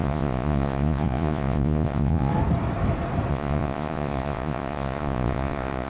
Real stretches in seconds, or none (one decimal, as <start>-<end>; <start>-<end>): 2.3-3.3